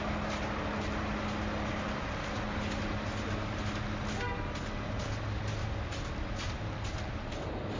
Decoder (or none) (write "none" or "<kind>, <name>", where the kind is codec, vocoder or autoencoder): none